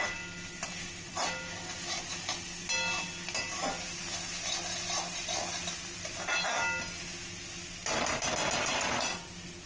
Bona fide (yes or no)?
yes